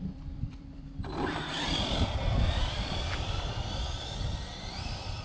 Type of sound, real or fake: fake